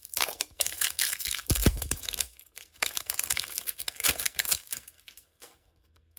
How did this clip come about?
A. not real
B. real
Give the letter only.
A